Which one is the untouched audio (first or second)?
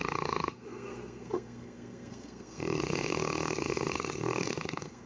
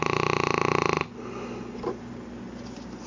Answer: second